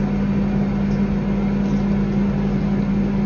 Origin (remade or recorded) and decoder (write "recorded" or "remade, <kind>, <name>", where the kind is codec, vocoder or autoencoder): recorded